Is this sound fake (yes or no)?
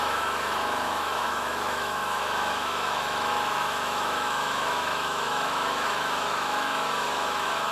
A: yes